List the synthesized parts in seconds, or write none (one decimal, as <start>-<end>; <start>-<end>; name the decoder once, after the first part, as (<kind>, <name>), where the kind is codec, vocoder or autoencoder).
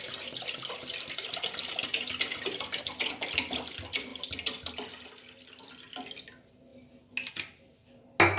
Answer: none